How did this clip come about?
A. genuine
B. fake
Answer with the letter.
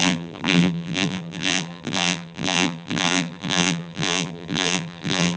B